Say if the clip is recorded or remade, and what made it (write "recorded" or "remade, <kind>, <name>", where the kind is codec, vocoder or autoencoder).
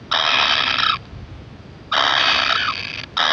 recorded